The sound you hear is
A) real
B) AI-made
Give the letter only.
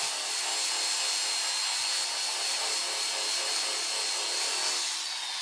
A